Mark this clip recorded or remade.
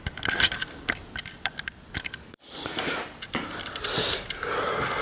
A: recorded